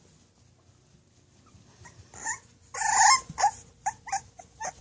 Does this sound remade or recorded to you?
recorded